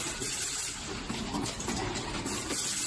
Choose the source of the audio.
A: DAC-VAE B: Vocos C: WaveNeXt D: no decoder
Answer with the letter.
D